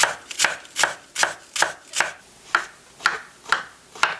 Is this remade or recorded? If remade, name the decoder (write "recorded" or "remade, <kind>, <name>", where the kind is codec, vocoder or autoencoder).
recorded